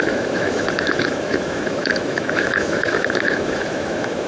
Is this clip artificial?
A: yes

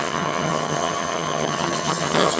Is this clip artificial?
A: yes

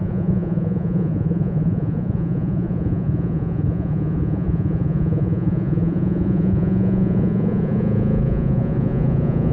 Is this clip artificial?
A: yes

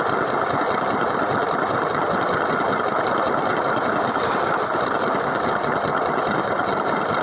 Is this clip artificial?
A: no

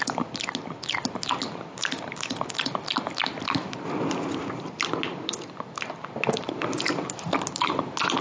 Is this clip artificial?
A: no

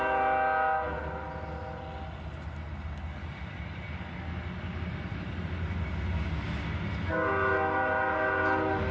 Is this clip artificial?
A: no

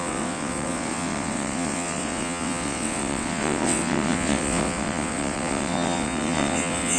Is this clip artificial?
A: yes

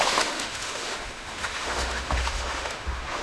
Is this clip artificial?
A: yes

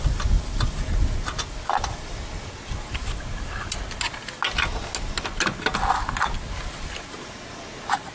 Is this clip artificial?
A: no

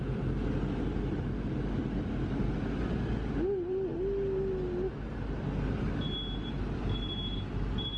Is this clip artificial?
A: no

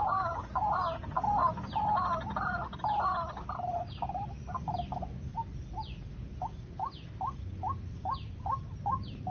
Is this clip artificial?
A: no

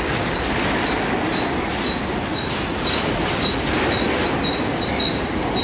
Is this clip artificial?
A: no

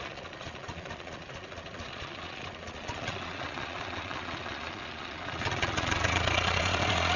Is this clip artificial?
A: yes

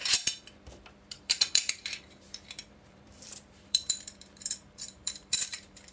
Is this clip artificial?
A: yes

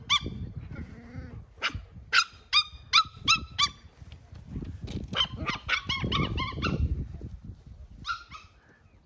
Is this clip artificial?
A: no